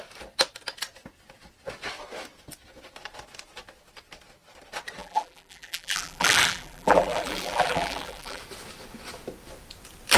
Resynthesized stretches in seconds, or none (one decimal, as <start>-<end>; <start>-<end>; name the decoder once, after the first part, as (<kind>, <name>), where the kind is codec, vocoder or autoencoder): 5.0-8.4 (vocoder, BigVGAN v2)

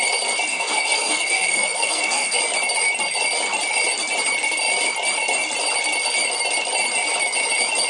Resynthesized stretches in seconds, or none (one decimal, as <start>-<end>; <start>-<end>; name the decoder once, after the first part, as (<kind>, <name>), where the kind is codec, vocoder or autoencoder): 0.5-2.4 (codec, SNAC)

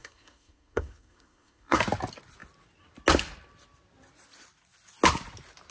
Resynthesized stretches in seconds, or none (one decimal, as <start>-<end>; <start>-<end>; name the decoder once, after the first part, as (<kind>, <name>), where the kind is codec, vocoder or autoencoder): 0.0-1.8 (codec, SNAC)

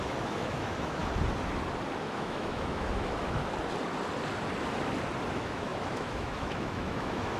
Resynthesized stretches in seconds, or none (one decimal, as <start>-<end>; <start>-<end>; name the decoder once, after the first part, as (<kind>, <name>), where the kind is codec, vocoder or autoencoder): 0.0-1.0 (autoencoder, DAC-VAE); 2.0-3.4; 5.3-7.4

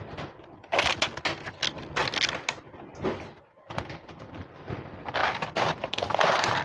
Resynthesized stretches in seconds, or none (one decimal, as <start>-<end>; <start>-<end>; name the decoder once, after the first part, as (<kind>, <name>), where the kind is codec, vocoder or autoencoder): 5.2-6.6 (vocoder, BigVGAN v2)

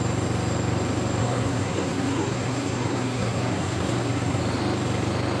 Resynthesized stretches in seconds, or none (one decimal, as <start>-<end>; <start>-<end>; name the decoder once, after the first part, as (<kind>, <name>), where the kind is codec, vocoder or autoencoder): 1.2-4.4 (codec, SNAC)

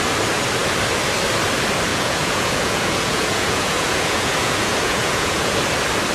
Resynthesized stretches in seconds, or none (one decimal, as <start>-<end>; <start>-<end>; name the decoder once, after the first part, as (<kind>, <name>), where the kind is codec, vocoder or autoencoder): 1.9-5.6 (vocoder, Vocos)

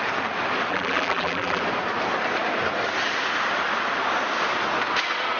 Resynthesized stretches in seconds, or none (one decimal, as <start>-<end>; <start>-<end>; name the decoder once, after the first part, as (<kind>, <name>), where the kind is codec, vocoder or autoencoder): 0.7-1.6 (vocoder, BigVGAN v2)